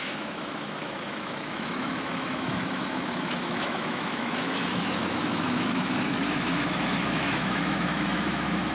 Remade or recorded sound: remade